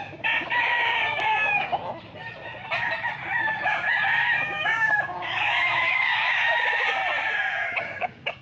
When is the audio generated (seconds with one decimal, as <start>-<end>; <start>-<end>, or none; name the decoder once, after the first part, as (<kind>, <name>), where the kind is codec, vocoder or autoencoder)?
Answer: 0.0-1.7 (codec, DAC); 3.4-7.0; 7.8-8.4